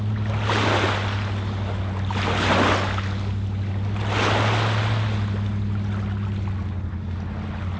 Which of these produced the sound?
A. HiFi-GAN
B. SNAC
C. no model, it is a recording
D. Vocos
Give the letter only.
C